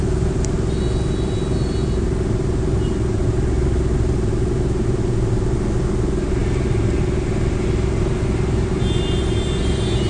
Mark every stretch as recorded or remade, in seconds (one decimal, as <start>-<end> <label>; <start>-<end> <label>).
0.0-10.1 recorded